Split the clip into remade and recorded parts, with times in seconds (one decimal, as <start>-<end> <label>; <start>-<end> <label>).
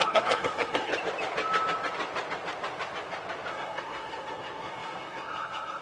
0.0-0.9 remade; 0.9-3.5 recorded; 3.5-5.8 remade